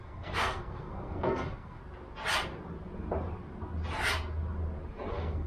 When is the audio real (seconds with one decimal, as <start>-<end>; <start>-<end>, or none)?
1.8-5.1